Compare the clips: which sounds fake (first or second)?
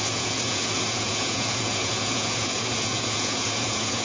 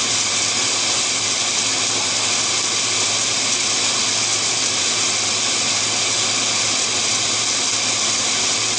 first